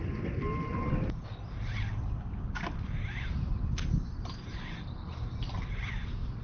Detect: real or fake real